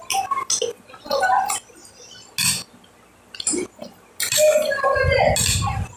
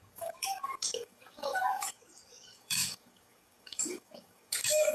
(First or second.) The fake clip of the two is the second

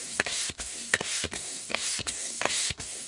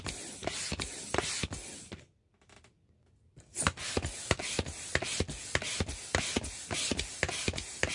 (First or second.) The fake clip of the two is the first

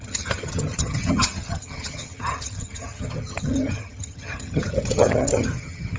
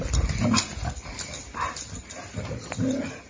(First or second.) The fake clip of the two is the first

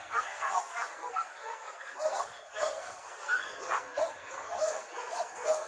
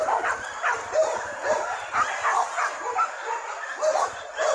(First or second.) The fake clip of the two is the first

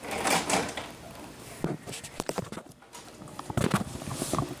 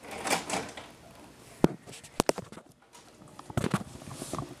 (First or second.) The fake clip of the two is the first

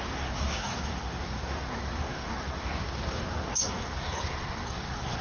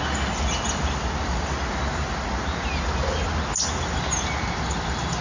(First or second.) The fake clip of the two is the first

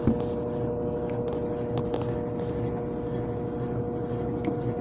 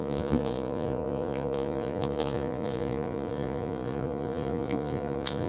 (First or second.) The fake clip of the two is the second